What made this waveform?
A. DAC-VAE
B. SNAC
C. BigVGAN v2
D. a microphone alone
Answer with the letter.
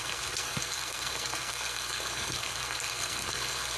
B